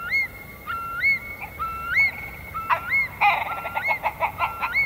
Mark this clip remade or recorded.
recorded